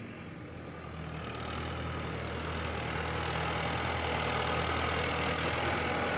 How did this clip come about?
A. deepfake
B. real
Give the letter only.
B